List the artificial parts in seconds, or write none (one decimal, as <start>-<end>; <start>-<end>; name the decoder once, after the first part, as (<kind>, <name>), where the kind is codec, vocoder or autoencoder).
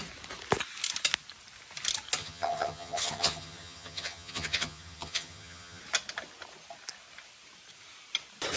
2.2-5.8 (vocoder, HiFi-GAN)